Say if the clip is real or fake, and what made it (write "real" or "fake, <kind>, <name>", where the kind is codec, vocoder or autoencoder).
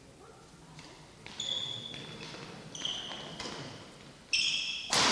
real